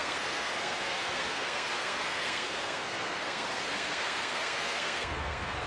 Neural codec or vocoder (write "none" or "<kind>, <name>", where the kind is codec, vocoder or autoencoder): codec, SNAC